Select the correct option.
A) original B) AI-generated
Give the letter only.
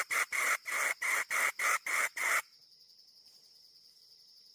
A